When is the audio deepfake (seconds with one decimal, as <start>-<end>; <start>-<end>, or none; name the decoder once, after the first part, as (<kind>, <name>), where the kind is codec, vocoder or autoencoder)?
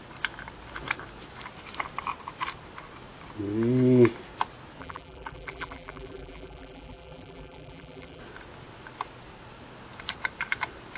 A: 4.8-8.2 (vocoder, BigVGAN v2)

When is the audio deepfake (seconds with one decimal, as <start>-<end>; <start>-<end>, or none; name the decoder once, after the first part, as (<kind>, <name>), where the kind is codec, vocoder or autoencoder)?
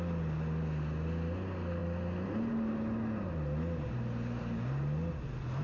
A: none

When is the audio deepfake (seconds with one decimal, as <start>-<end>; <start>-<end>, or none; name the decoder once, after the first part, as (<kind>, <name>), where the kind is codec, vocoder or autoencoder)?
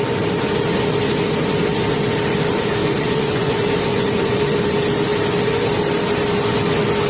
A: 2.8-3.5 (vocoder, Vocos); 3.9-4.4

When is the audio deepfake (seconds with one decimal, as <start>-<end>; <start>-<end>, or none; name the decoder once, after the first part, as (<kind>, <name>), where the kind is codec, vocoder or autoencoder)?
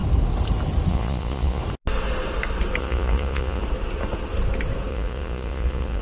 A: 0.9-1.6 (vocoder, Vocos); 2.8-3.6; 4.9-6.0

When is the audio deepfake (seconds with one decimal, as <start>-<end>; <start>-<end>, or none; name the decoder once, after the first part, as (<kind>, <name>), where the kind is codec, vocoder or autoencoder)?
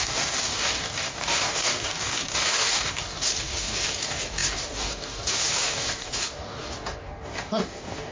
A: 0.0-8.1 (codec, DAC)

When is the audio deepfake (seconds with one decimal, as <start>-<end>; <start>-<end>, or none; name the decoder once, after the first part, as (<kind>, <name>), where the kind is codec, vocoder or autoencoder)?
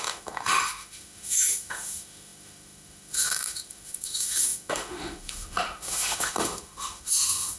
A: 0.0-7.6 (autoencoder, DAC-VAE)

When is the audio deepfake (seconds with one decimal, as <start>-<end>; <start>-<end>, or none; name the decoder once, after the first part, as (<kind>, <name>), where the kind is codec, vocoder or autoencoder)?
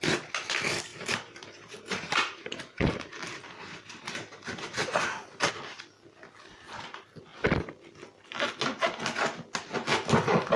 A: 0.9-5.5 (vocoder, BigVGAN v2)